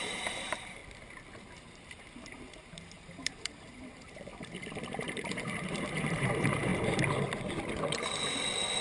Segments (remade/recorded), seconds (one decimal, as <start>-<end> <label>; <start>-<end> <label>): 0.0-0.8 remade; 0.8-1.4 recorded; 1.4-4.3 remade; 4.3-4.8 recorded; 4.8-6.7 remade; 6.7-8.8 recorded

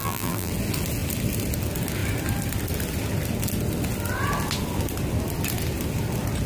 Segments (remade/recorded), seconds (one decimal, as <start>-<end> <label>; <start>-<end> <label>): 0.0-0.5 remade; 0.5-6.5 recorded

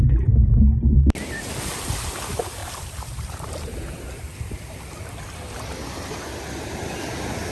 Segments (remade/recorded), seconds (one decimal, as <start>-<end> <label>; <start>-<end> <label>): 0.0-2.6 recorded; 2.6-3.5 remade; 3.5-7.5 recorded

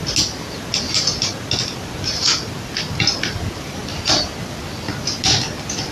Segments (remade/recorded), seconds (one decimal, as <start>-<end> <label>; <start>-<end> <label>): 0.0-5.9 recorded

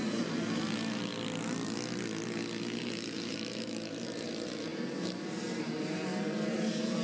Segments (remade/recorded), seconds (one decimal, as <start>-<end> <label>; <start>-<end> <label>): 0.0-1.1 remade; 1.1-2.8 recorded; 2.8-7.0 remade